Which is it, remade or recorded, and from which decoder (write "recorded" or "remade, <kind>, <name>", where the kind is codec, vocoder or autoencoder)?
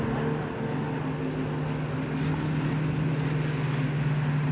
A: recorded